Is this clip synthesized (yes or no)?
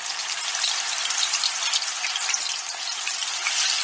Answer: no